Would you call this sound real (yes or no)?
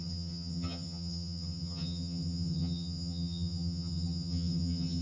no